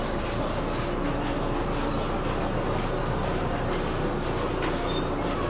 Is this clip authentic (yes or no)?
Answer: yes